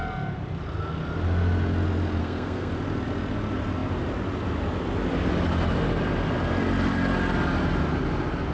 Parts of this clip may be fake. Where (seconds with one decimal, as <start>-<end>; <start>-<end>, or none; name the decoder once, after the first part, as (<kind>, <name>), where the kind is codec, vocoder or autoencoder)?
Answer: 2.2-2.7 (codec, SNAC)